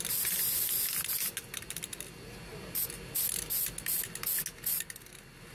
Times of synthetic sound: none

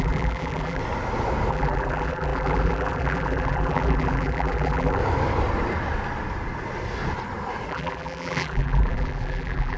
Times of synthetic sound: 0.0-0.8 (vocoder, BigVGAN v2); 1.5-5.0; 7.7-9.8